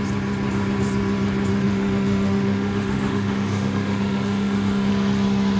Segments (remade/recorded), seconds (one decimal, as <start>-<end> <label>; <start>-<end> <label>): 0.0-1.5 recorded; 1.5-4.9 remade; 4.9-5.6 recorded